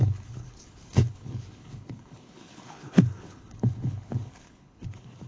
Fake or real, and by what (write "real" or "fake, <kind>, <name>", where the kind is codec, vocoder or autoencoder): fake, codec, HILCodec